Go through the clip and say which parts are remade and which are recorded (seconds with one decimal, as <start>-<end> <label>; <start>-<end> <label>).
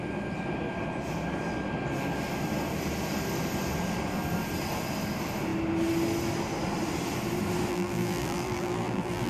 0.0-7.7 recorded; 7.7-9.3 remade